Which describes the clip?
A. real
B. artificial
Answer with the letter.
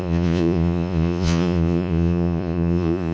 B